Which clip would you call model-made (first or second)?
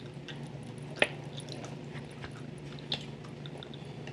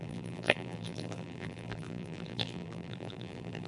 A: second